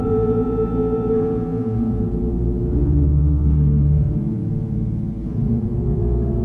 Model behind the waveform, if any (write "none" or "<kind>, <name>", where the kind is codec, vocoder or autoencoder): vocoder, Vocos